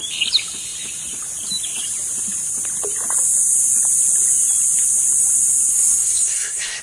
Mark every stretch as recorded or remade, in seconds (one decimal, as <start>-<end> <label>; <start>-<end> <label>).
0.0-5.7 recorded; 5.7-6.8 remade

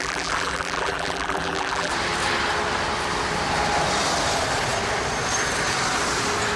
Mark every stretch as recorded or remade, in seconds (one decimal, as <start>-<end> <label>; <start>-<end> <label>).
0.0-1.9 remade; 1.9-6.6 recorded

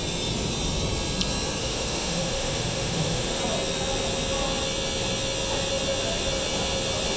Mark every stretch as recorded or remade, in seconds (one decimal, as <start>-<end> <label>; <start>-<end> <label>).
0.0-1.6 recorded; 1.6-3.4 remade; 3.4-7.2 recorded

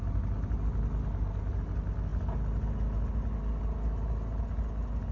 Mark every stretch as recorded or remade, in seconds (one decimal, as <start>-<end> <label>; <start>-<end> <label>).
0.0-5.1 recorded

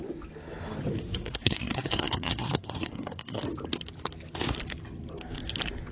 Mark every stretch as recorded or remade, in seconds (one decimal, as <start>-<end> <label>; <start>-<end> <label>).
0.0-1.0 recorded; 1.0-3.4 remade; 3.4-5.9 recorded